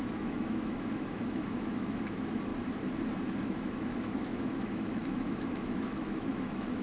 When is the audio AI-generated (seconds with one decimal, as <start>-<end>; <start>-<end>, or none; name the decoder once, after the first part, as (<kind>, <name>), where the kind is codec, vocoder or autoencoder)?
0.0-2.5 (autoencoder, DAC-VAE); 3.4-6.8